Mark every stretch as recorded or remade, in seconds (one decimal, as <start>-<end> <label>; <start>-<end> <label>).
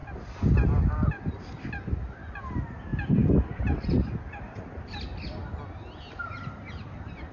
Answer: 0.0-7.3 recorded